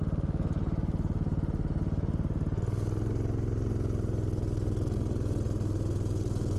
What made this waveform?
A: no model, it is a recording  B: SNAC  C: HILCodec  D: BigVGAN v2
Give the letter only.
A